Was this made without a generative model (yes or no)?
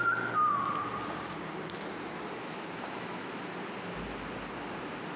yes